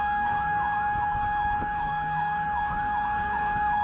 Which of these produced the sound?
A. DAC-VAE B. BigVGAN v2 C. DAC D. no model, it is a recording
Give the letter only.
C